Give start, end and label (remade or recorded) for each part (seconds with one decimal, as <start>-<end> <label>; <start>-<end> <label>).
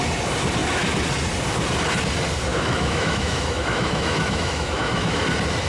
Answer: 0.0-2.5 recorded; 2.5-5.2 remade; 5.2-5.7 recorded